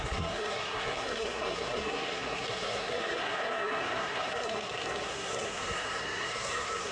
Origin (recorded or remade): remade